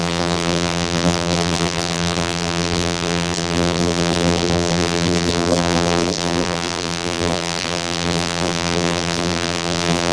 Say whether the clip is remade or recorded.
remade